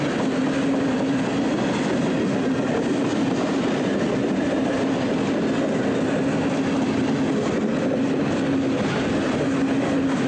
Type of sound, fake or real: real